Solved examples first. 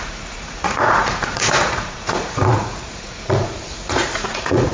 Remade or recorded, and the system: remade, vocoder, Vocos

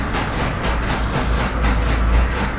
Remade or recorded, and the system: recorded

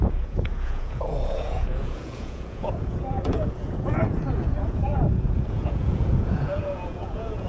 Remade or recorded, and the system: remade, vocoder, Vocos